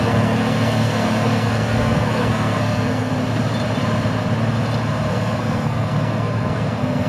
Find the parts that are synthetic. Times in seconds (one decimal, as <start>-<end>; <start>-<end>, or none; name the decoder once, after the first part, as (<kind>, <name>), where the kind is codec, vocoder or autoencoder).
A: 0.0-3.1 (codec, SNAC); 5.1-7.1